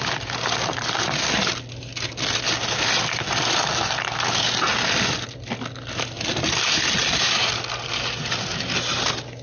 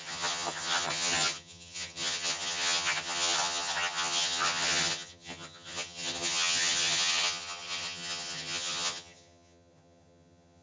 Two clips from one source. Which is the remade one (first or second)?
second